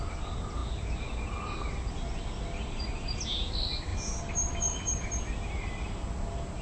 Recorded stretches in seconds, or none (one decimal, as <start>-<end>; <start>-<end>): 0.0-3.9; 5.2-6.6